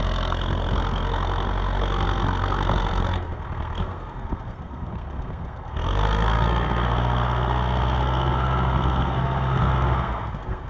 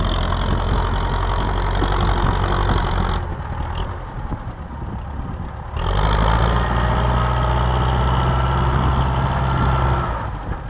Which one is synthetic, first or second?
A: first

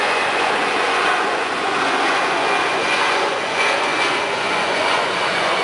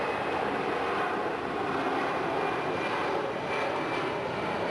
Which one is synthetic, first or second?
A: first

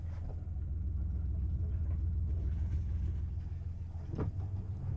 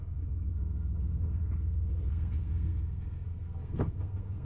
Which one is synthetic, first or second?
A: second